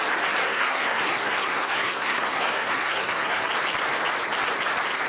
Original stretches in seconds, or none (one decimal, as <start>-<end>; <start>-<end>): 0.0-0.4; 3.5-5.1

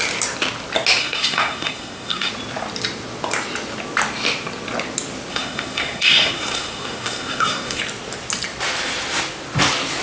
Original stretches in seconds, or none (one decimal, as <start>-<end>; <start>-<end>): 0.0-1.0; 2.3-5.3; 7.8-10.0